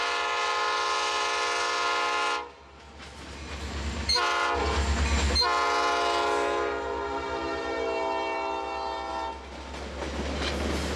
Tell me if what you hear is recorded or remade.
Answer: recorded